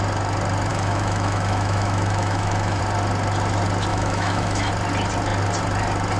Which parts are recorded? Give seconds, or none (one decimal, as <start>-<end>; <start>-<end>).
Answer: 0.0-0.7; 2.8-3.9; 4.7-6.2